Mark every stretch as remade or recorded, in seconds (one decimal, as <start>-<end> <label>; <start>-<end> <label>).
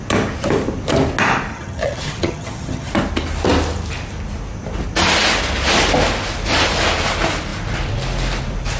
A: 0.0-1.5 recorded; 1.5-2.9 remade; 2.9-8.8 recorded